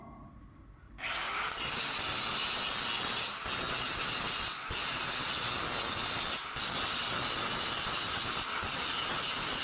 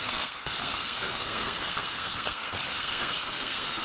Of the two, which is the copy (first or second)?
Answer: second